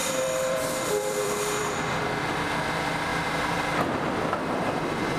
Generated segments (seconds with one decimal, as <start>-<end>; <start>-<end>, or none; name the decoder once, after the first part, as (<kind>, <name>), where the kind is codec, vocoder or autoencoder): 0.0-1.6 (vocoder, BigVGAN v2); 3.1-3.7